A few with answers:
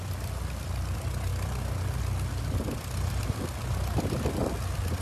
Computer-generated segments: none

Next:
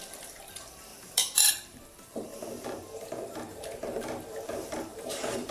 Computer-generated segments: 0.0-5.5 (vocoder, BigVGAN v2)

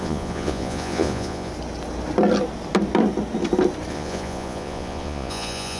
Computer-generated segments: 0.0-1.5 (vocoder, Vocos); 3.9-5.8